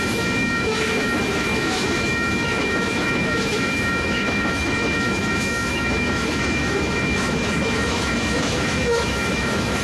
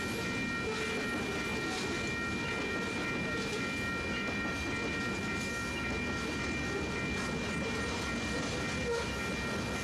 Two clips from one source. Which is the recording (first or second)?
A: second